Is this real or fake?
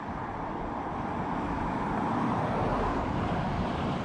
fake